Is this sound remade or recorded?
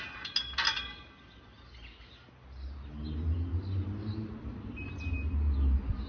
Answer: recorded